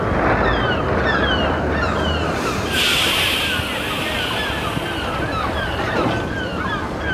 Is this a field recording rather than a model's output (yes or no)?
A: yes